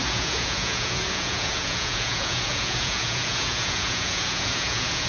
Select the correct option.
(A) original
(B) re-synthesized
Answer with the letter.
B